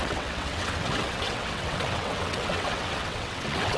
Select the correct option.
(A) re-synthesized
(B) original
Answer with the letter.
A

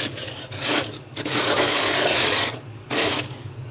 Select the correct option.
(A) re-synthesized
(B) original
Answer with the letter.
A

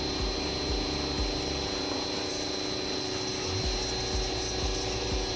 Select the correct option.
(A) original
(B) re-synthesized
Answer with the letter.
A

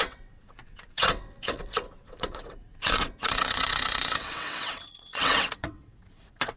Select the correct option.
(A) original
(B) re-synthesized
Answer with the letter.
B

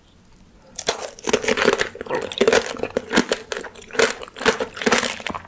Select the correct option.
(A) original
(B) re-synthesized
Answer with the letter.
A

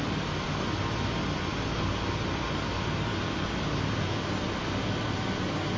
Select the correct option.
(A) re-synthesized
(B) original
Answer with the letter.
B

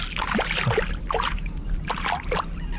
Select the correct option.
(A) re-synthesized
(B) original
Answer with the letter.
B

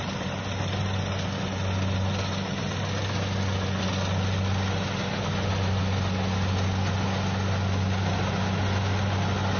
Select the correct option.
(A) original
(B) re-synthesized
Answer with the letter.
A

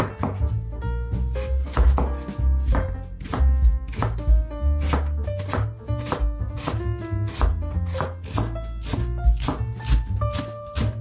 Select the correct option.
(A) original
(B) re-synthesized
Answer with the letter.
A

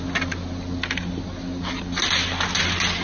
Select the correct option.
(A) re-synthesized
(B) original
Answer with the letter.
B